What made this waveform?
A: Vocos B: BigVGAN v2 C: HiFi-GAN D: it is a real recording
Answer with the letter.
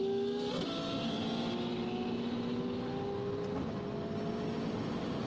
D